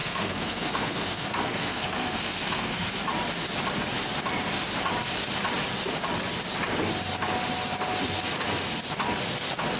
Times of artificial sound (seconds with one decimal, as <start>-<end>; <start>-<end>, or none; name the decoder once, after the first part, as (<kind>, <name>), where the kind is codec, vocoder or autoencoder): 0.0-3.0 (codec, SNAC)